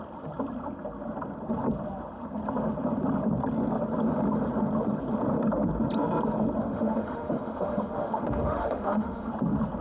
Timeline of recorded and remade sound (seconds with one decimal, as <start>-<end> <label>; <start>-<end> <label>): 0.0-6.6 recorded; 6.6-9.3 remade; 9.3-9.8 recorded